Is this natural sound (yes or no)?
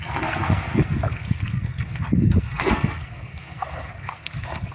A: no